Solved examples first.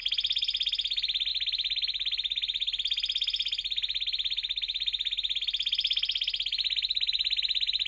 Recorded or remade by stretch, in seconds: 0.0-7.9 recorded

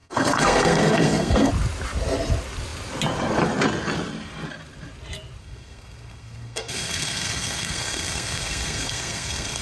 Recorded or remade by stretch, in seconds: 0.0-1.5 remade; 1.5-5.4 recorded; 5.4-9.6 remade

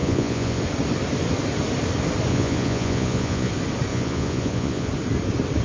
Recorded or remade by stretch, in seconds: 0.0-0.6 remade; 0.6-2.3 recorded; 2.3-3.5 remade; 3.5-3.9 recorded; 3.9-4.9 remade; 4.9-5.6 recorded

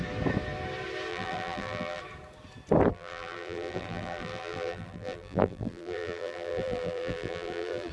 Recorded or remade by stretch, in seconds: 0.0-1.1 recorded; 1.1-2.0 remade; 2.0-2.9 recorded; 2.9-7.9 remade

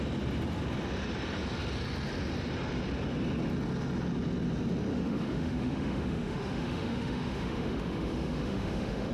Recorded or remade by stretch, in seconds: 0.0-4.9 recorded; 4.9-9.1 remade